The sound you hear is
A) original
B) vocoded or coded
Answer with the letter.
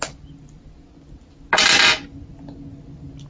A